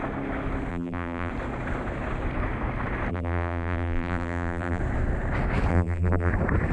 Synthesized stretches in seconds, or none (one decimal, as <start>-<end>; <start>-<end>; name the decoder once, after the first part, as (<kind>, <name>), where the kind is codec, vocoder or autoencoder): 0.7-1.3 (vocoder, BigVGAN v2); 3.1-4.8; 5.7-6.3